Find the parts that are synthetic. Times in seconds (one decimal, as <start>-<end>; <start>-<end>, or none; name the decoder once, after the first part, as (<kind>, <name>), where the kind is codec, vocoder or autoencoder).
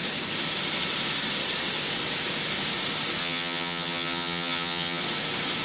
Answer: 3.2-5.0 (vocoder, HiFi-GAN)